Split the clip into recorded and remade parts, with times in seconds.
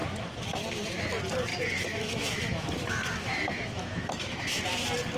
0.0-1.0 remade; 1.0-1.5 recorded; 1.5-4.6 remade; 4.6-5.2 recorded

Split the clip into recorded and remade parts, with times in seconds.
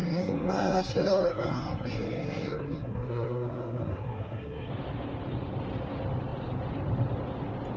0.0-4.7 remade; 4.7-7.8 recorded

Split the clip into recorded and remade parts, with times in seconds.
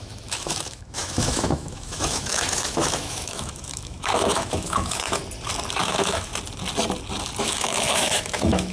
0.0-5.2 remade; 5.2-5.8 recorded; 5.8-6.3 remade; 6.3-7.4 recorded; 7.4-8.7 remade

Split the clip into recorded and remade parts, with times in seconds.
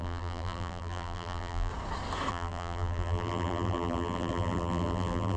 0.0-1.7 remade; 1.7-2.3 recorded; 2.3-5.4 remade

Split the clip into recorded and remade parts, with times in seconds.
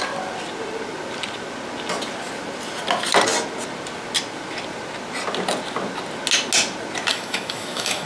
0.0-7.1 recorded; 7.1-8.1 remade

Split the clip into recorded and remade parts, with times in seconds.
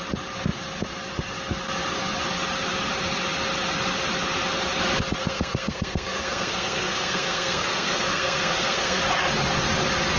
0.0-5.2 recorded; 5.2-9.0 remade; 9.0-10.2 recorded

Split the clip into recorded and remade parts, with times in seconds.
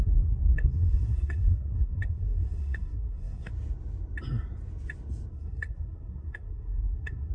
0.0-3.5 remade; 3.5-5.3 recorded; 5.3-7.3 remade